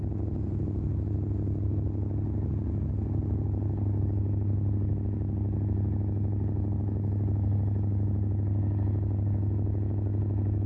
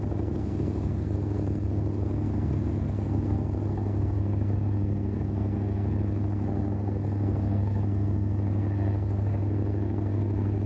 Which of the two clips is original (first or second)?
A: first